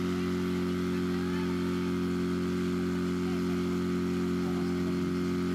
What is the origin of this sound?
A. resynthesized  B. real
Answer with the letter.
B